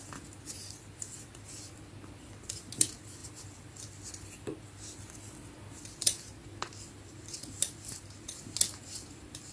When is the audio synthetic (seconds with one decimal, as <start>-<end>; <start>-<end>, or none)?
none

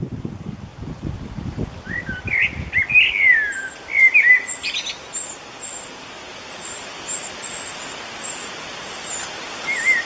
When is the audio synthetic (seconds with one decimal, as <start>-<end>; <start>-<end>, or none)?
none

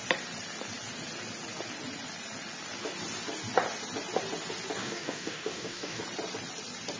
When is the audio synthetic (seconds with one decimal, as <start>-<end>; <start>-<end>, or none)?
4.8-6.0

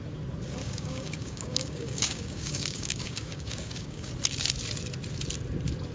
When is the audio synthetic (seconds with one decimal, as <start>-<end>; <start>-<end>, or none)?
0.6-4.1

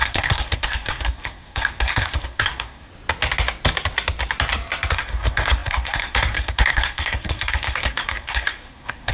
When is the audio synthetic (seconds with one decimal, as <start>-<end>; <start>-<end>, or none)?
0.0-2.9; 4.9-9.1